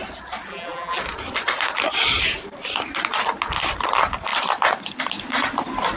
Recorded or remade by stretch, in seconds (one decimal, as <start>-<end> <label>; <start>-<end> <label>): 0.0-0.5 recorded; 0.5-1.0 remade; 1.0-6.0 recorded